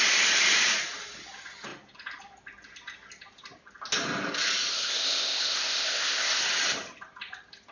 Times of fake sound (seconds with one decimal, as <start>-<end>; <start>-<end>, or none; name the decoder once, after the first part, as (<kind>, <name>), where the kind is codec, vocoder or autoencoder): 4.7-6.4 (codec, ZipCodec)